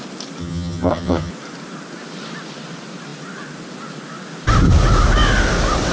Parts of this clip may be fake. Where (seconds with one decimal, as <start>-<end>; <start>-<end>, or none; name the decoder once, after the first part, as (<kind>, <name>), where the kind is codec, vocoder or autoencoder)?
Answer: 0.4-1.3 (vocoder, HiFi-GAN)